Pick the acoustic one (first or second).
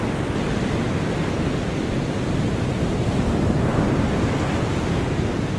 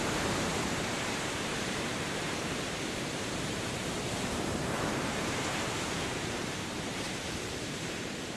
first